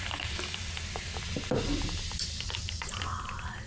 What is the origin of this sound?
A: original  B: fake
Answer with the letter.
A